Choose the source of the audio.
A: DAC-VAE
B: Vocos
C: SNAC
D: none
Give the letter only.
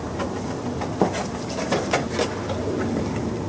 D